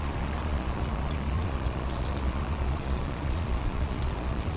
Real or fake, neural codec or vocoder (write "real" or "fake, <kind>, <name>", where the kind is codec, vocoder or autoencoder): fake, vocoder, Vocos